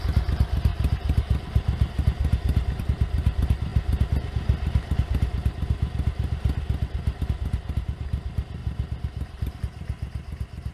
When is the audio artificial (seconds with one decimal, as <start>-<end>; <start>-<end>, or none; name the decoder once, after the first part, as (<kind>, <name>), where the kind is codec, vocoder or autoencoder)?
8.6-9.6 (vocoder, BigVGAN v2)